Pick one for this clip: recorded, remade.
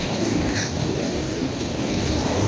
remade